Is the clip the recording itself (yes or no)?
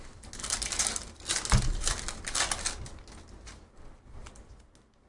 yes